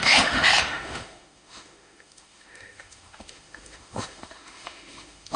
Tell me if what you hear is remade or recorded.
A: remade